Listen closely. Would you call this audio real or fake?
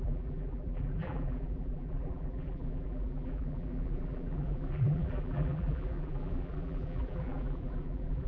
fake